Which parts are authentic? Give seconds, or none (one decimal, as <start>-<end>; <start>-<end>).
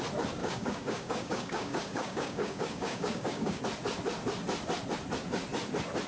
0.0-0.4; 3.6-6.1